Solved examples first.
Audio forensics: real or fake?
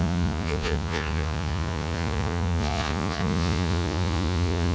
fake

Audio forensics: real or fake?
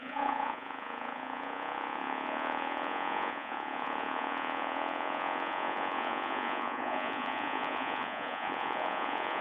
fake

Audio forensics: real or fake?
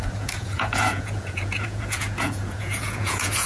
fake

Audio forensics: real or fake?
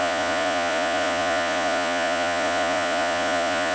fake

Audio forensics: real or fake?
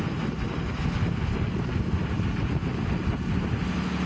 real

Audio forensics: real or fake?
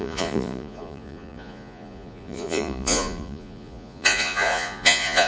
fake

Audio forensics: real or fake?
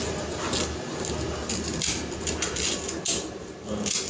real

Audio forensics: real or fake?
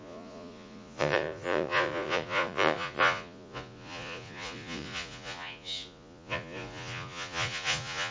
fake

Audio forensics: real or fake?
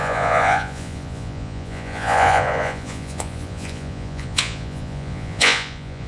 fake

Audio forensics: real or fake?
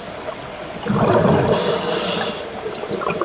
real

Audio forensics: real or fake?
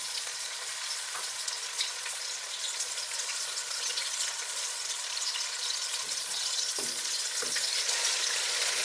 fake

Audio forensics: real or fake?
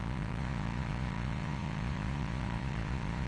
fake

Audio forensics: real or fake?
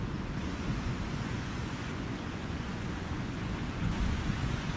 fake